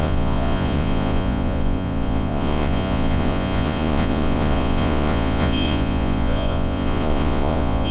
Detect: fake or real fake